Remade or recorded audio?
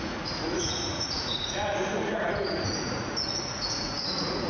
remade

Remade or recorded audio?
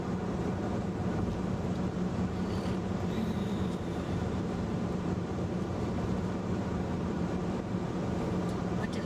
remade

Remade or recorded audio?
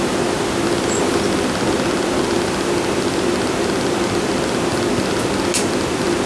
recorded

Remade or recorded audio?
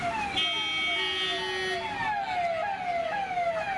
recorded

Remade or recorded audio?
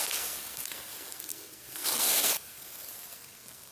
remade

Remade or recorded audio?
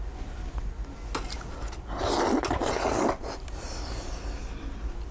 recorded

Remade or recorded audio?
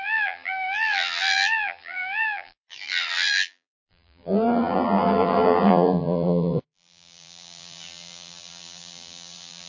remade